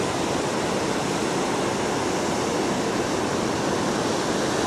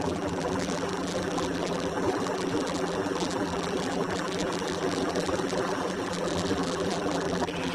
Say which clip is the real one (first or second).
first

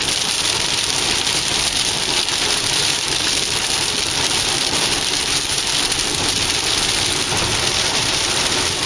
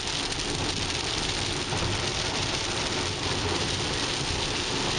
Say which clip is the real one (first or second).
second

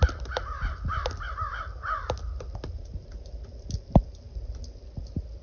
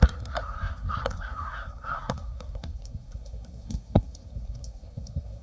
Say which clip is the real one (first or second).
first